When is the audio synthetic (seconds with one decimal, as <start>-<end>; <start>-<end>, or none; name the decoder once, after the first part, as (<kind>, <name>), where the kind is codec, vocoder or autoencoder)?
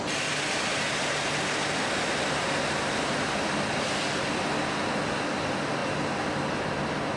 none